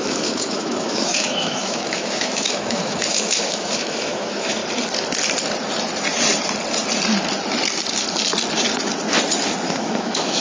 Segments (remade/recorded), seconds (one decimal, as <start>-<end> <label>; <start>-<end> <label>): 0.0-4.6 remade; 4.6-9.7 recorded; 9.7-10.4 remade

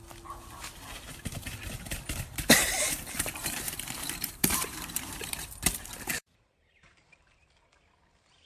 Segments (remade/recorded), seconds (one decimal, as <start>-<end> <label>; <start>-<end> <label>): 0.0-3.4 recorded; 3.4-5.2 remade; 5.2-6.1 recorded; 6.1-7.4 remade; 7.4-8.5 recorded